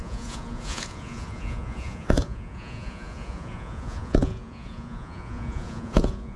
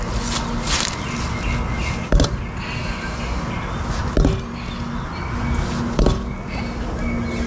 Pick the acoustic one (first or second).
second